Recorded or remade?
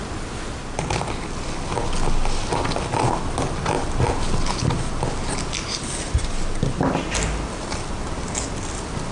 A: recorded